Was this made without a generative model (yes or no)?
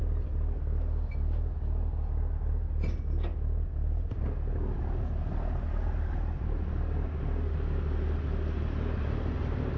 yes